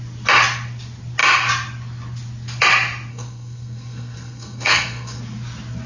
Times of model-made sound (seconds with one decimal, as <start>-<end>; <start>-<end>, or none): 3.1-5.2

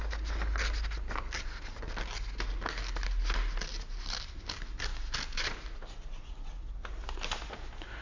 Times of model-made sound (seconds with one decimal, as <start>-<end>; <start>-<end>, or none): none